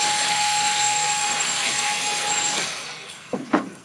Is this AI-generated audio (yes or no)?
yes